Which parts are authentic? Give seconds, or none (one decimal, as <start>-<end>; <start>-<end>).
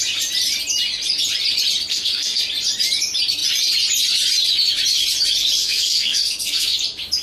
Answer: 0.0-1.9; 2.4-5.6; 6.8-7.2